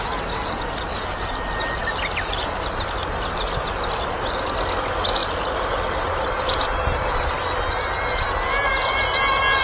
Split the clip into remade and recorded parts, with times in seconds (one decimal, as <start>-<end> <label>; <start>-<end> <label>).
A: 0.0-5.2 recorded; 5.2-7.3 remade; 7.3-9.6 recorded